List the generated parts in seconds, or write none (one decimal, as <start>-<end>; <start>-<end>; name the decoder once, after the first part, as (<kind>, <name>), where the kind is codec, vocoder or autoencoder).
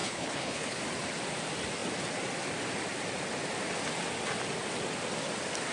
0.0-0.8 (codec, HILCodec)